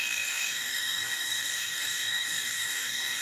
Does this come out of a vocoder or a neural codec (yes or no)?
yes